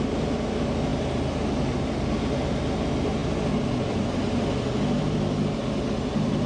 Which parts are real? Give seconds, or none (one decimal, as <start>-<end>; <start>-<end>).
0.0-6.5

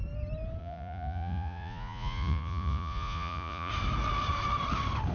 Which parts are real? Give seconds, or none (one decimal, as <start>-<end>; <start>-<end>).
0.0-0.6; 3.7-5.1

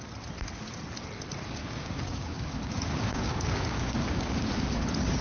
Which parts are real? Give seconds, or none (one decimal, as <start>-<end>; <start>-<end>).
0.0-1.6; 4.5-5.2

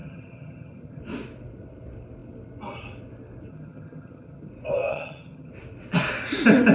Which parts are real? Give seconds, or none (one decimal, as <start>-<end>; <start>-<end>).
1.0-3.5; 4.5-4.9; 5.5-6.7